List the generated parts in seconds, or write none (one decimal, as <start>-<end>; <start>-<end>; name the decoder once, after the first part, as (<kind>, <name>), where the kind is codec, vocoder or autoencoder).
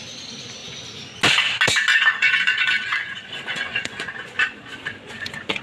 0.6-1.2 (vocoder, Vocos); 1.9-5.6